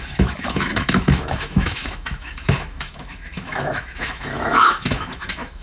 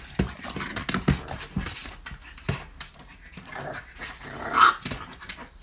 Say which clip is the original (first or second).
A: second